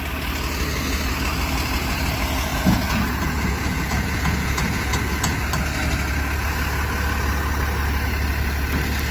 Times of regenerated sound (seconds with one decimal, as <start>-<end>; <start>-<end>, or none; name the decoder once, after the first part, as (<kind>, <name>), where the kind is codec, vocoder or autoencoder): 2.5-5.4 (vocoder, Vocos)